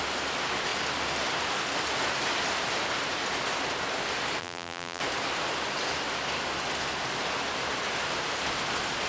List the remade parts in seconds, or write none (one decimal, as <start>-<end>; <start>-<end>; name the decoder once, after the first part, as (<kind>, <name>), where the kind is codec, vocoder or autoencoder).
4.4-5.0 (vocoder, BigVGAN v2)